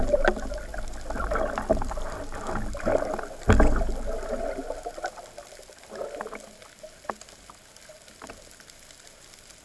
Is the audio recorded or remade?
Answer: recorded